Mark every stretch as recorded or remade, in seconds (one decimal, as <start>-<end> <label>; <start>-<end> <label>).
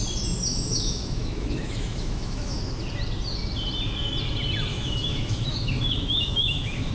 0.0-0.5 recorded; 0.5-2.6 remade; 2.6-4.7 recorded; 4.7-6.9 remade